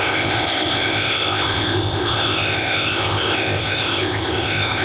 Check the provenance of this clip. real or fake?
fake